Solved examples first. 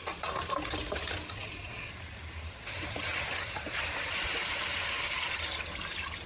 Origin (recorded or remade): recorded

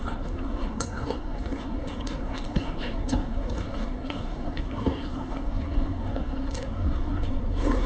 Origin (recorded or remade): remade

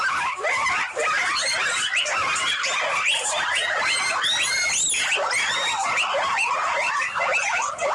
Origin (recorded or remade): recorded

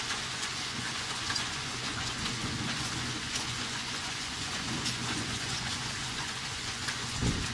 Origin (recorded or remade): remade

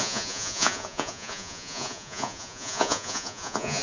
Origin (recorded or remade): remade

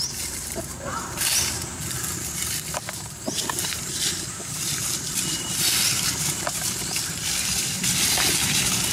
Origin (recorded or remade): recorded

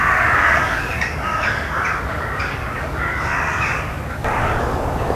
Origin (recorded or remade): remade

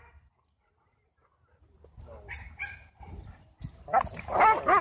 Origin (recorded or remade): recorded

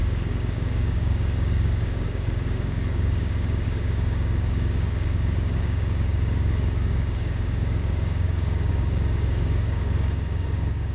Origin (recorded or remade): remade